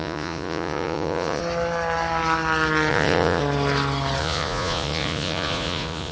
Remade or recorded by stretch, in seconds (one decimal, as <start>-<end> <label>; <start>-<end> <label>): 0.0-1.4 remade; 1.4-2.9 recorded; 2.9-3.4 remade; 3.4-4.2 recorded; 4.2-6.1 remade